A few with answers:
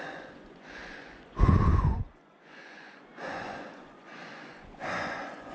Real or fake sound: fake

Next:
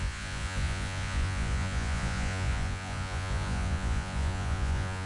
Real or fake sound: fake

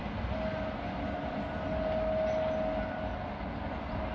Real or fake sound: real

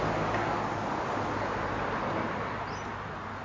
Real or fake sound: real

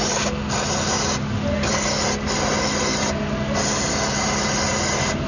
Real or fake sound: real